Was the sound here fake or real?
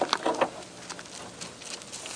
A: real